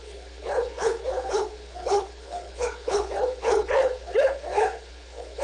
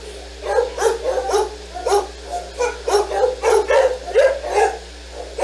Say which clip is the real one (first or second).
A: second